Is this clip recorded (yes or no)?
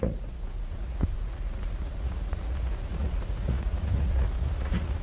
no